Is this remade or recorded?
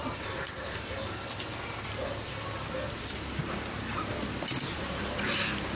recorded